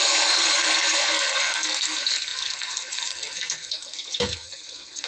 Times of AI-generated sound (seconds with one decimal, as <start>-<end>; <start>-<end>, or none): 0.0-5.1